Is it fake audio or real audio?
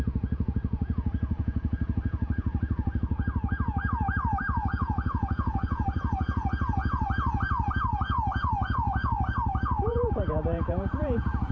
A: fake